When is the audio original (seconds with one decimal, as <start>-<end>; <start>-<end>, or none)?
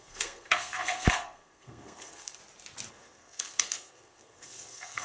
2.4-2.9